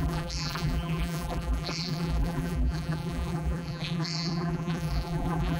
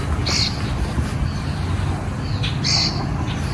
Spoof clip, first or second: first